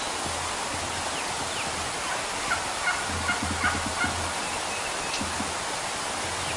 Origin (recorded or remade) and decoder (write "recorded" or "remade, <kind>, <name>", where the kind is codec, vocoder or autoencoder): recorded